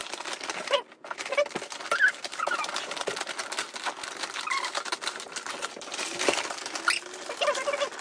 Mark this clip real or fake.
real